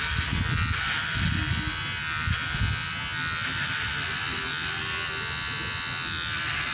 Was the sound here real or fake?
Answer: real